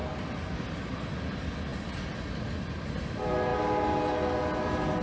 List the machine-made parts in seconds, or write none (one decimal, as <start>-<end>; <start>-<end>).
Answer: none